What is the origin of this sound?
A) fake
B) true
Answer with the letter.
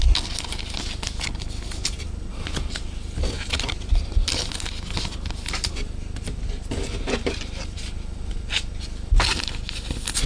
B